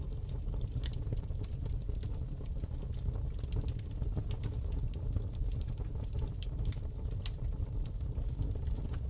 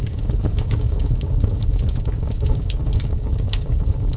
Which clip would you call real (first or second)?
first